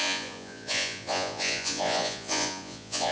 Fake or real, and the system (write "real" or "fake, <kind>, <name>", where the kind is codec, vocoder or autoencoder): fake, vocoder, Vocos